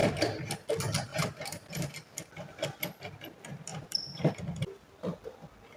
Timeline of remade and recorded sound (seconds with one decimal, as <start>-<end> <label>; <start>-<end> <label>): 0.0-0.7 remade; 0.7-1.1 recorded; 1.1-1.9 remade; 1.9-3.7 recorded; 3.7-4.3 remade; 4.3-5.8 recorded